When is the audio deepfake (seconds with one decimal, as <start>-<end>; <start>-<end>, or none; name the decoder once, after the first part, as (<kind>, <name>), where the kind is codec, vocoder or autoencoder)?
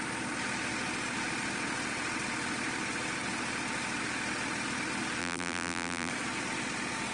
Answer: 5.2-6.1 (vocoder, BigVGAN v2)